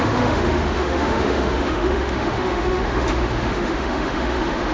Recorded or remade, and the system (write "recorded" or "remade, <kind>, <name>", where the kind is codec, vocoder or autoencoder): remade, autoencoder, DAC-VAE